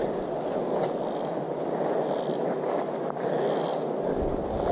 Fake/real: real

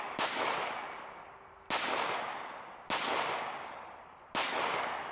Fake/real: real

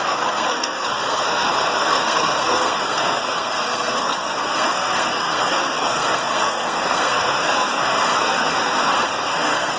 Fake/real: fake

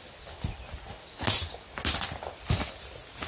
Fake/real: real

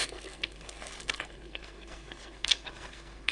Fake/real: fake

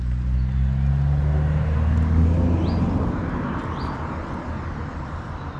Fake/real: real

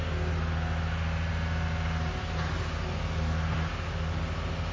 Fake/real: real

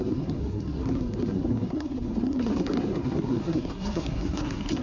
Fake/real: fake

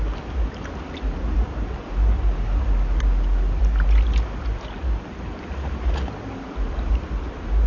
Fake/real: real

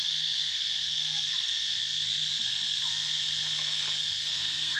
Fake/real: fake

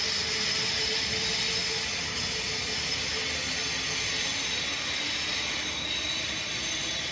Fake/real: real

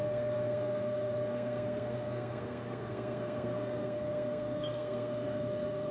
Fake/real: fake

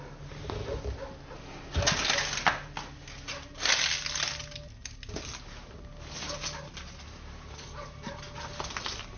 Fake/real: real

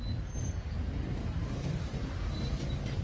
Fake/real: real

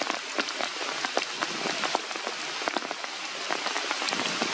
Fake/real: real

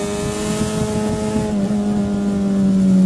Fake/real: real